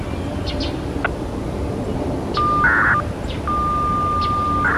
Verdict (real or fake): real